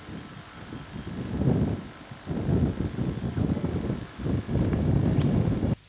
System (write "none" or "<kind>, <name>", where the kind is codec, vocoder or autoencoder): none